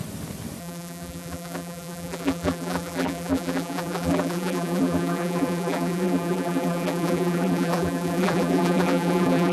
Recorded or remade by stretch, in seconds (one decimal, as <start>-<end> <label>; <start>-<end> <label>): 0.0-0.6 recorded; 0.6-9.5 remade